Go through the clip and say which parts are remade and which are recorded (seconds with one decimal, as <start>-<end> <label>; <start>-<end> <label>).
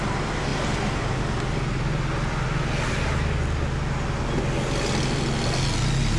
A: 0.0-6.2 recorded